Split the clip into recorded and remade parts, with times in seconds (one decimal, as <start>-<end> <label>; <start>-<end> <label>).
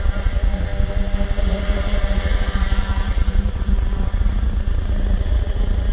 0.0-0.7 remade; 0.7-1.4 recorded; 1.4-5.9 remade